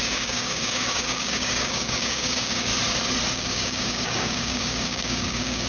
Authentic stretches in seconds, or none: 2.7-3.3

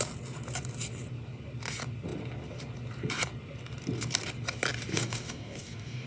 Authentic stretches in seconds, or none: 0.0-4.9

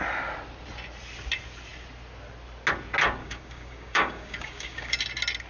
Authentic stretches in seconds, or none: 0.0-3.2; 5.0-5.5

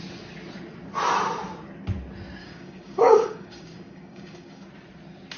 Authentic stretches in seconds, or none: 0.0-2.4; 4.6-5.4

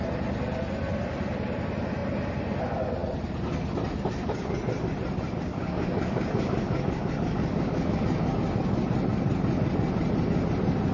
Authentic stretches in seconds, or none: 0.0-5.5; 8.3-10.9